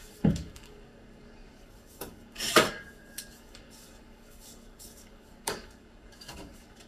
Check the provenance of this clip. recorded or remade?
remade